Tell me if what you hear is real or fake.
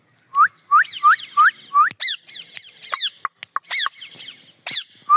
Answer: real